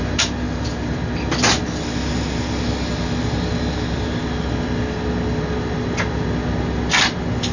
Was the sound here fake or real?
real